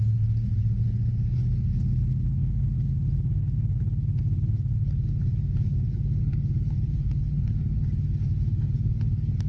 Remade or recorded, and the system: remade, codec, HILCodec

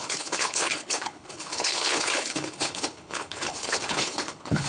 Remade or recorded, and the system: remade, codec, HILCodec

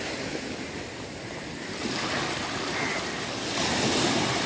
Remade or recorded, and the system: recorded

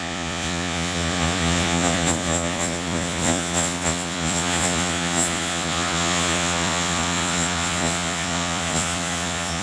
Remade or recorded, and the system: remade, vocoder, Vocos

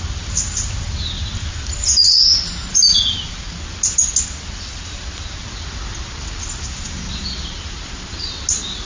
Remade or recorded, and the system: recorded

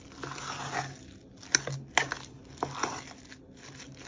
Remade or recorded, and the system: recorded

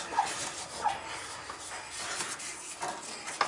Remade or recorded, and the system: recorded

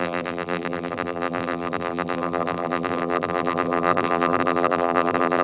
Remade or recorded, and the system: remade, vocoder, BigVGAN v2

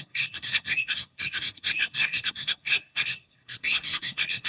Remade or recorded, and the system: remade, codec, SNAC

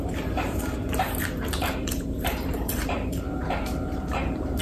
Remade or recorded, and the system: remade, vocoder, BigVGAN v2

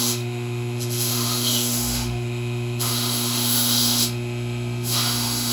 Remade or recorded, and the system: remade, autoencoder, DAC-VAE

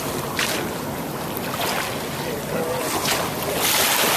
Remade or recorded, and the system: recorded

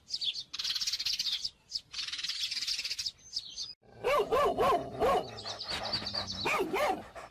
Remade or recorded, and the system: recorded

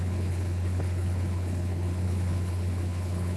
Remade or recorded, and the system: remade, codec, HILCodec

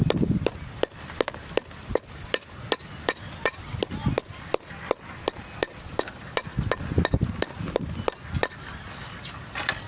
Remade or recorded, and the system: recorded